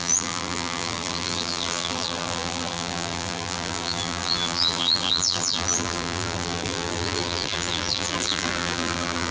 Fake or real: fake